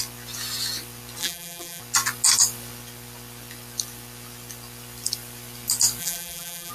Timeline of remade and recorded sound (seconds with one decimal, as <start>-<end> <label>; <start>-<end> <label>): 0.0-1.2 recorded; 1.2-1.8 remade; 1.8-6.0 recorded; 6.0-6.7 remade

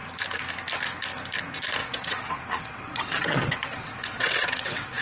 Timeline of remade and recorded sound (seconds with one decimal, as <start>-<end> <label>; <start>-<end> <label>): 0.0-1.8 recorded; 1.8-5.0 remade

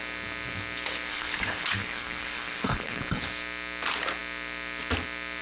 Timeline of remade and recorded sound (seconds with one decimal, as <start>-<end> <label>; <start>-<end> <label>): 0.0-1.1 recorded; 1.1-3.0 remade; 3.0-5.4 recorded

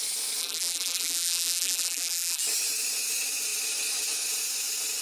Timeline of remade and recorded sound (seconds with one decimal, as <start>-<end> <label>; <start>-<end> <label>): 0.0-0.4 recorded; 0.4-2.4 remade; 2.4-5.0 recorded

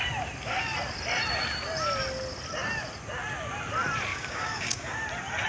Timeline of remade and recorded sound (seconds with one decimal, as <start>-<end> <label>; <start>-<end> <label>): 0.0-4.1 recorded; 4.1-4.9 remade; 4.9-5.5 recorded

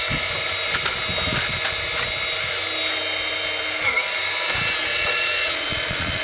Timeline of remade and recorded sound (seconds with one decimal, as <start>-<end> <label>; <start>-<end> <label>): 0.0-4.9 recorded; 4.9-6.2 remade

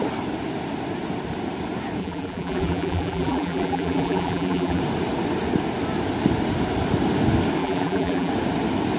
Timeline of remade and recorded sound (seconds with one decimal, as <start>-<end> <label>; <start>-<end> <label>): 0.0-2.0 recorded; 2.0-4.8 remade; 4.8-7.6 recorded; 7.6-8.3 remade; 8.3-9.0 recorded

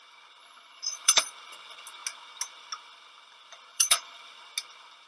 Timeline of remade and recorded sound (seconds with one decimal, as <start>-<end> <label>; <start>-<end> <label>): 0.0-0.4 recorded; 0.4-1.2 remade; 1.2-3.7 recorded; 3.7-4.2 remade; 4.2-5.1 recorded